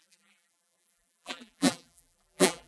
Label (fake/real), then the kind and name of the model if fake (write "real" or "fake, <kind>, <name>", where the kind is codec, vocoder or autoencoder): fake, vocoder, BigVGAN v2